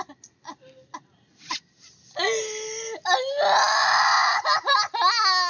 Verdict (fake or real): real